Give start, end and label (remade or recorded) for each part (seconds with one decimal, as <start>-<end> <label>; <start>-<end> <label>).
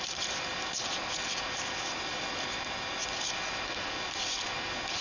0.0-0.5 remade; 0.5-1.5 recorded; 1.5-3.0 remade; 3.0-5.0 recorded